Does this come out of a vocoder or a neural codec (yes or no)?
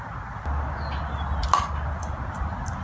no